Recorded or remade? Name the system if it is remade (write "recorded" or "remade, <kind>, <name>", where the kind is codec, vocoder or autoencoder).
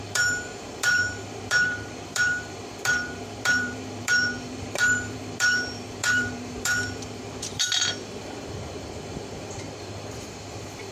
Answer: remade, vocoder, BigVGAN v2